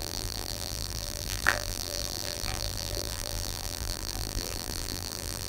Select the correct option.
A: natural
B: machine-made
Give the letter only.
B